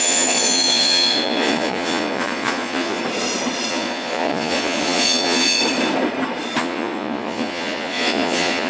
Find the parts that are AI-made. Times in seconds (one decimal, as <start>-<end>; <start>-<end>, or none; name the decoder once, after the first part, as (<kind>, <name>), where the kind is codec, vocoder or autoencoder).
0.0-3.0 (vocoder, Vocos); 3.7-5.6; 6.6-8.7